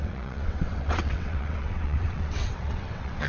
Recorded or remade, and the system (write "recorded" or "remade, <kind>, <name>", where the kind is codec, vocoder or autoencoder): remade, vocoder, WaveNeXt